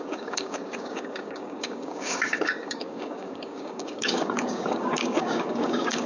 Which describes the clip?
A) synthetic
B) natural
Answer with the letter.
A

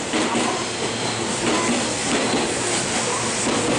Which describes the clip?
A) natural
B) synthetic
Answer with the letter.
A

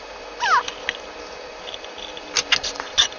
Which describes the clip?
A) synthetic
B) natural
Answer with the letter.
B